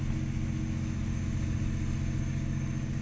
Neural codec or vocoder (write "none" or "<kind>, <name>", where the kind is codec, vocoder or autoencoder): none